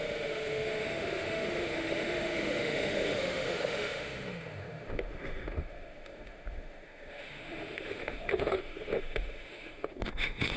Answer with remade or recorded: remade